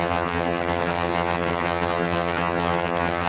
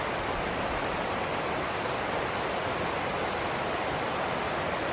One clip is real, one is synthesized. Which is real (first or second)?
second